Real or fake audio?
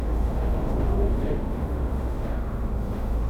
fake